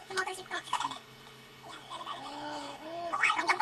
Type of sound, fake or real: fake